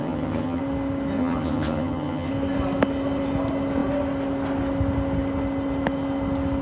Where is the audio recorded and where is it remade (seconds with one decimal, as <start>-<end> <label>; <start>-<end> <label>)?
0.0-0.6 remade; 0.6-1.2 recorded; 1.2-2.3 remade; 2.3-6.6 recorded